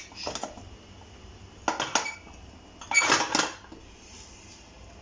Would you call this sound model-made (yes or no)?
no